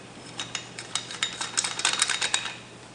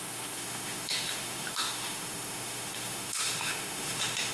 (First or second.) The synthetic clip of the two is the second